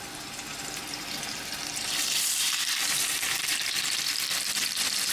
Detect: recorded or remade remade